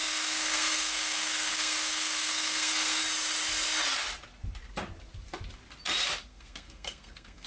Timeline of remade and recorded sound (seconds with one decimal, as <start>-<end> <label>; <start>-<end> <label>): 0.0-3.0 remade; 3.0-6.3 recorded; 6.3-7.5 remade